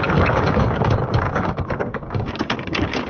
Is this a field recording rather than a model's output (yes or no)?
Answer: no